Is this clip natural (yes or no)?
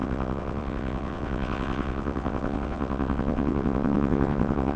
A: no